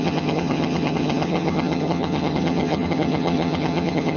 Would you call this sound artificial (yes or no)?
yes